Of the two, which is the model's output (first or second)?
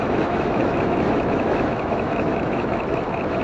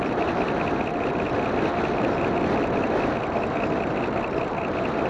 first